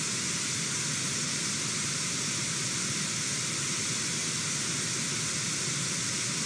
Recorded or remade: recorded